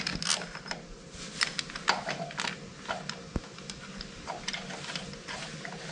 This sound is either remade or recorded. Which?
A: recorded